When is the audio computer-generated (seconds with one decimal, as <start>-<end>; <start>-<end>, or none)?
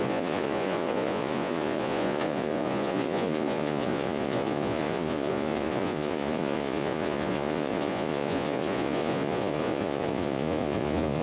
0.0-11.2